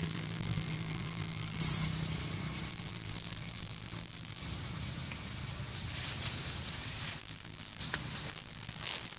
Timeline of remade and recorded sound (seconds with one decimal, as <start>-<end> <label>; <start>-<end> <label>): 0.0-1.6 remade; 1.6-2.7 recorded; 2.7-4.4 remade; 4.4-7.2 recorded; 7.2-7.8 remade; 7.8-8.3 recorded; 8.3-9.2 remade